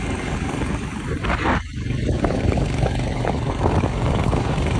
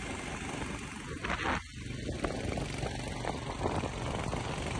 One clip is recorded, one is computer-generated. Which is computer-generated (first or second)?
first